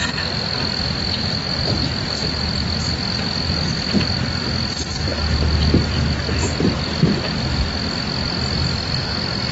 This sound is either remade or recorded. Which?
recorded